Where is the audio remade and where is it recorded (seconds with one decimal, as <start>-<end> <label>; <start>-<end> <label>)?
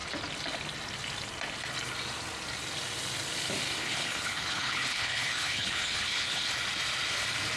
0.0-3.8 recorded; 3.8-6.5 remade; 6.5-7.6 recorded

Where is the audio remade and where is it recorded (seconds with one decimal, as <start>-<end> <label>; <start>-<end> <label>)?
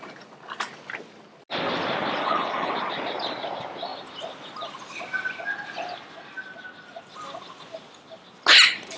0.0-2.2 recorded; 2.2-2.7 remade; 2.7-9.0 recorded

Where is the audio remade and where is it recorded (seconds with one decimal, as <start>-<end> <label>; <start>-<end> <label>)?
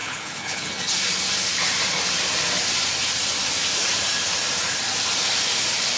0.0-0.7 remade; 0.7-6.0 recorded